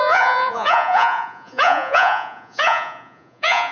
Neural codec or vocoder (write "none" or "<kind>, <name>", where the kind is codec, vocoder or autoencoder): vocoder, Vocos